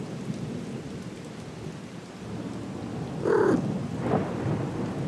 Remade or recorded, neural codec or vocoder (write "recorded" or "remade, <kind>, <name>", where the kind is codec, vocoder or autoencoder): recorded